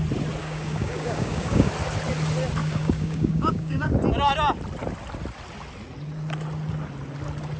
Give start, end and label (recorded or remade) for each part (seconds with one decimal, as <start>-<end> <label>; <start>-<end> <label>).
0.0-0.4 recorded; 0.4-1.7 remade; 1.7-2.6 recorded; 2.6-3.9 remade; 3.9-7.6 recorded